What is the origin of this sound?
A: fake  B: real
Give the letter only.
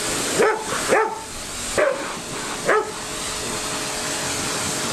B